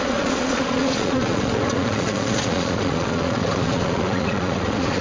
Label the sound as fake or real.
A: fake